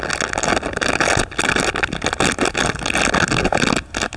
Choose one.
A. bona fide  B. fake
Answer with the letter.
A